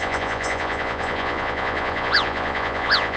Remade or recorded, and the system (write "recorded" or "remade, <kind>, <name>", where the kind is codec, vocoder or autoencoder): remade, vocoder, Vocos